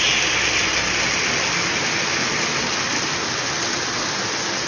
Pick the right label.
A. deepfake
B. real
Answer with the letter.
B